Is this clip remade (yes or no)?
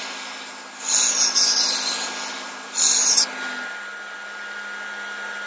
no